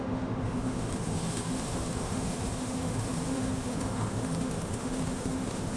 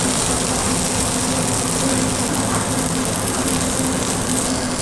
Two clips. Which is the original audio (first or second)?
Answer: second